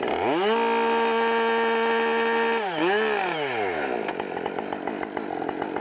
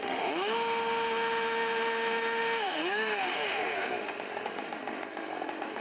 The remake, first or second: second